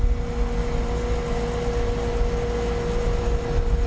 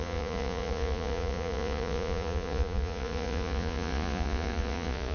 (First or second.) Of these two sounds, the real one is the first